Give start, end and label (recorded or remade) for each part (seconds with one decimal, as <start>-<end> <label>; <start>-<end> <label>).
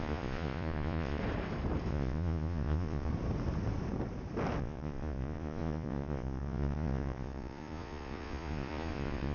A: 0.0-1.2 remade; 1.2-1.9 recorded; 1.9-3.1 remade; 3.1-4.6 recorded; 4.6-9.3 remade